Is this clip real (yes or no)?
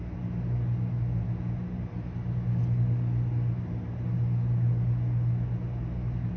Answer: yes